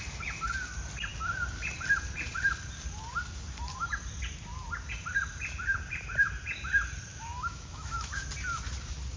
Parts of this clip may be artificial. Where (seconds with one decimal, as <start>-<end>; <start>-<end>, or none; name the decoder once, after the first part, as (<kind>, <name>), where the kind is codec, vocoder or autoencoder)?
7.1-8.2 (autoencoder, DAC-VAE)